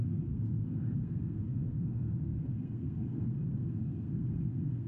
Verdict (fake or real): fake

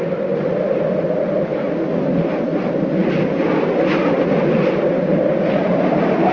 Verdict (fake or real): real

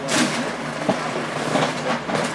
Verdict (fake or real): real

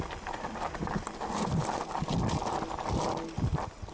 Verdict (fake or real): real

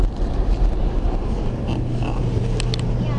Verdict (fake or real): real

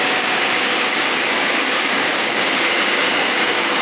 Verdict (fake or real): fake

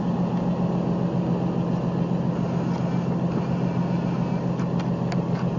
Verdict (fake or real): real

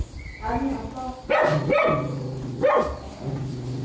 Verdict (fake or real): real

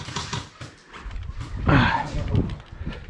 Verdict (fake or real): real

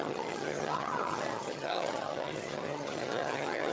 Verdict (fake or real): fake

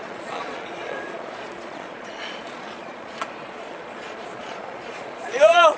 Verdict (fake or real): fake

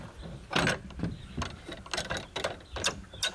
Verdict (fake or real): real